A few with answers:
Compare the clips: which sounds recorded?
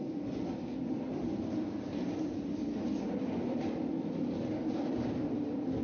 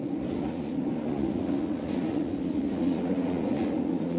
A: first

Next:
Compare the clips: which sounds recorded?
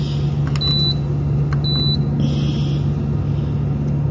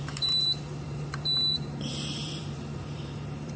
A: first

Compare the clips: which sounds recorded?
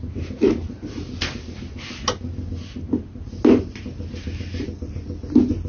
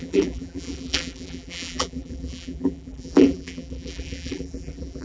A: first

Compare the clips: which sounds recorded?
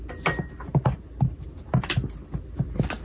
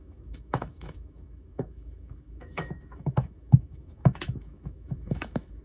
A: first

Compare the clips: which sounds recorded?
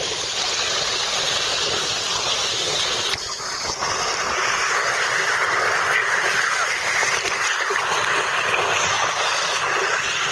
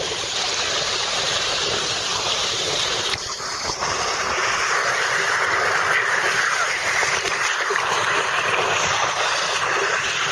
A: first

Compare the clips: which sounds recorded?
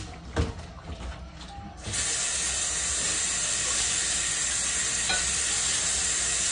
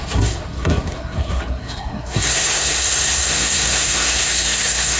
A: first